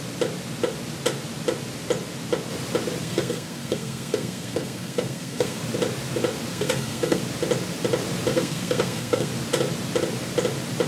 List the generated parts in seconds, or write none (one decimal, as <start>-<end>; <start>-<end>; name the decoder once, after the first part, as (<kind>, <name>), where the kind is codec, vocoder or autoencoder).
3.0-5.6 (codec, SNAC); 6.5-7.2; 8.3-9.3